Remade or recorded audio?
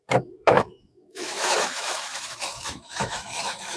remade